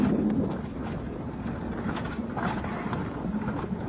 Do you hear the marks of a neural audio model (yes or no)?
no